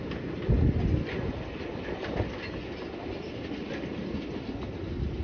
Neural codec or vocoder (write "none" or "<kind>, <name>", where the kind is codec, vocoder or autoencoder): none